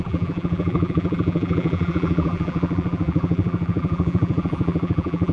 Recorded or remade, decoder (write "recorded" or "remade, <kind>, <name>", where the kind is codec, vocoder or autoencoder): remade, vocoder, BigVGAN v2